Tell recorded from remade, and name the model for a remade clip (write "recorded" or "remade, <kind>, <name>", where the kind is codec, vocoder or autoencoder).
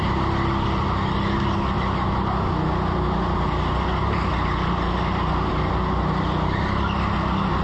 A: recorded